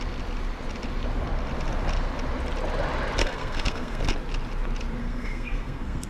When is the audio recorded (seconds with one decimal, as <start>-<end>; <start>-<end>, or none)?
0.0-3.2; 4.0-5.0